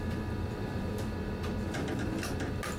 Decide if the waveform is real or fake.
real